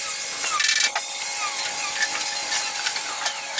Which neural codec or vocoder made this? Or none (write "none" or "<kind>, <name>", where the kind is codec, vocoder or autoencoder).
none